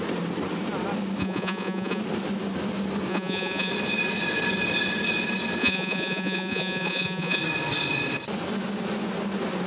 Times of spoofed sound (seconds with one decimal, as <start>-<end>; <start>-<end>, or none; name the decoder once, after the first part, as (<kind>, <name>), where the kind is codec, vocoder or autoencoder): 1.2-2.0 (vocoder, Vocos); 3.1-3.7; 5.6-7.4